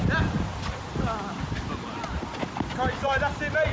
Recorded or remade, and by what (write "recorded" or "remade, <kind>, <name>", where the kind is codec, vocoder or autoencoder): recorded